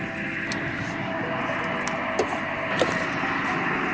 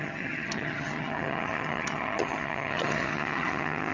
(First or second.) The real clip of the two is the first